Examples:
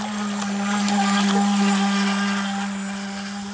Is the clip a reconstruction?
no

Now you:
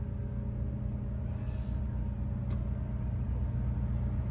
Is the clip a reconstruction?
no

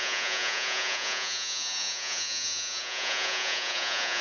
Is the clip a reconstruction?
yes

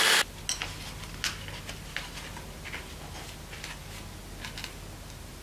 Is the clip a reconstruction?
no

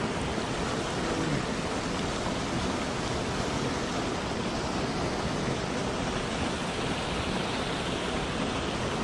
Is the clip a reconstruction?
no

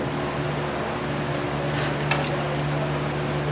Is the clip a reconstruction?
no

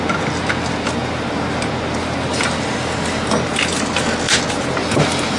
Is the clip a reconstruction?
no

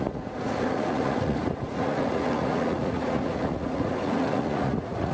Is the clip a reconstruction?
yes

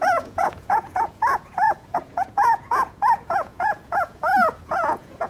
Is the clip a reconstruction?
yes